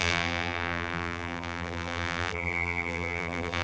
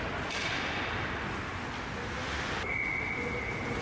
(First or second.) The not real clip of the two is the first